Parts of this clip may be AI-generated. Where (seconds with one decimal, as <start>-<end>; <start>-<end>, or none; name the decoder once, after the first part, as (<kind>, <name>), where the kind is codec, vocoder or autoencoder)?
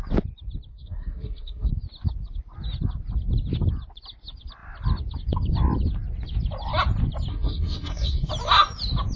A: 0.7-1.7 (codec, SNAC); 7.3-8.3